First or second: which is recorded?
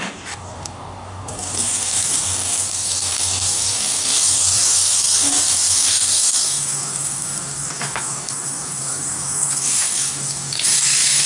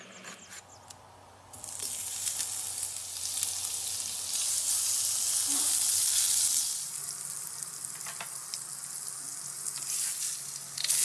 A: second